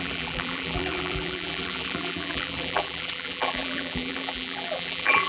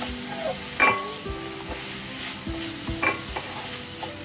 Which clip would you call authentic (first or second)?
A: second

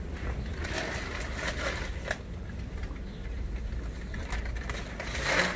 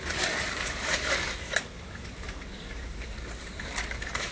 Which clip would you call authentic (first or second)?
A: first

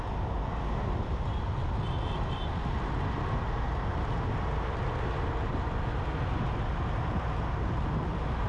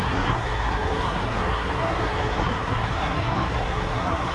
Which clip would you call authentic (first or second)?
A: first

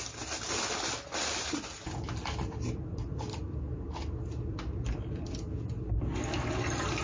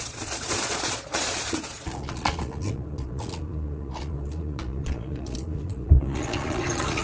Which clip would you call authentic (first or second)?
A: first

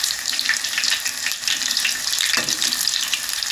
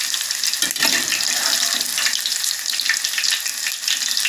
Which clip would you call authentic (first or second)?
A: second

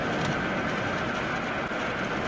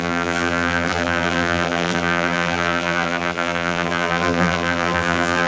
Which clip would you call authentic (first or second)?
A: first